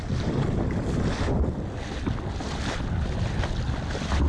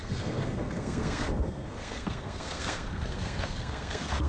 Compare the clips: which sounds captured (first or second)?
first